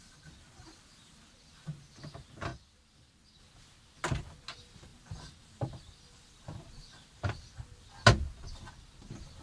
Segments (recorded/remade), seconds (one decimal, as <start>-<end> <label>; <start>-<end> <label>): 0.0-2.5 recorded; 2.5-3.4 remade; 3.4-4.9 recorded; 4.9-5.7 remade; 5.7-9.4 recorded

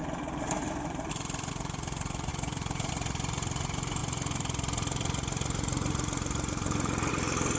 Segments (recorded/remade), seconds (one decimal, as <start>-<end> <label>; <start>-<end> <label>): 0.0-1.5 remade; 1.5-2.3 recorded; 2.3-2.9 remade; 2.9-7.6 recorded

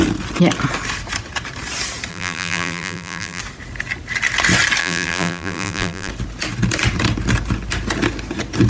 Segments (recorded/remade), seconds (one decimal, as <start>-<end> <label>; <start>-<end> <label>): 0.0-2.1 recorded; 2.1-3.4 remade; 3.4-4.8 recorded; 4.8-6.1 remade; 6.1-8.7 recorded

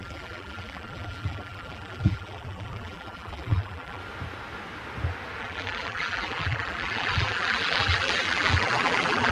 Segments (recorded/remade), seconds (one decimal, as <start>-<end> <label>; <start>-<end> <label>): 0.0-4.0 remade; 4.0-5.4 recorded; 5.4-9.3 remade